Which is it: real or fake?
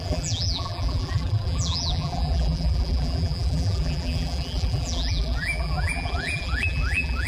fake